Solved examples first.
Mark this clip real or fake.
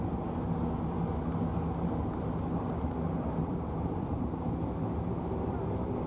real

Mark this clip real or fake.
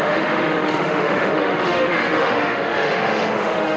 fake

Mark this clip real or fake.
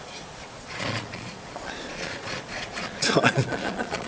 fake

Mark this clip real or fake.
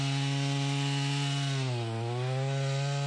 real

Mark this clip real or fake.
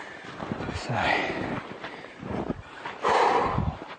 fake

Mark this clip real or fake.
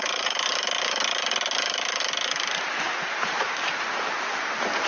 real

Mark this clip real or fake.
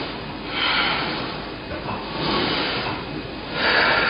real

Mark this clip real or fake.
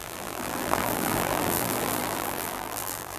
fake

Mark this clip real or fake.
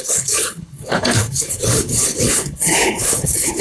fake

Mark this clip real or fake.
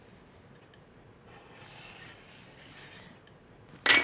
real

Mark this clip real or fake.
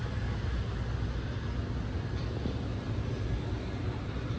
real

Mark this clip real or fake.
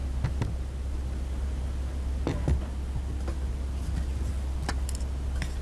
real